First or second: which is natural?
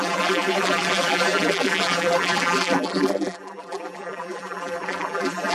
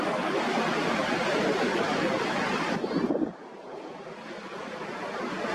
second